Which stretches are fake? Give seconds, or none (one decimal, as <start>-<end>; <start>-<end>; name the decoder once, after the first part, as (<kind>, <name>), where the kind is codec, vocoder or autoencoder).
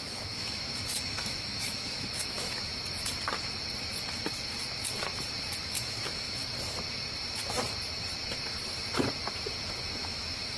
0.0-2.7 (autoencoder, DAC-VAE); 5.6-6.4; 10.0-10.6